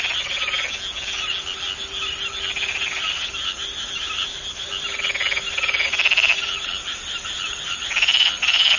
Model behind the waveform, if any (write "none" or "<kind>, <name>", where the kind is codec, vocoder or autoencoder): none